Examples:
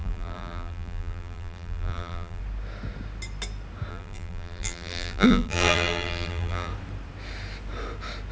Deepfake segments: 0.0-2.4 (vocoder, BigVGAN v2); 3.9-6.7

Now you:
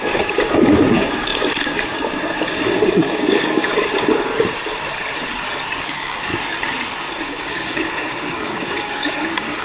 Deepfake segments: 0.0-4.3 (codec, DAC); 5.8-6.3; 7.3-9.6

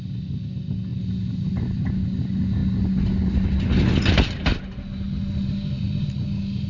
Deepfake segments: none

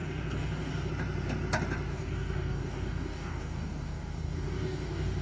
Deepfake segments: 0.0-0.9 (codec, DAC); 1.9-5.2

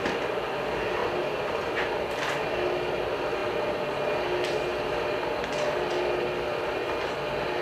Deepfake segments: 1.0-2.0 (vocoder, BigVGAN v2)

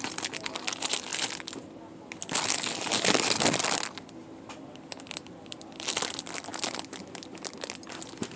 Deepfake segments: none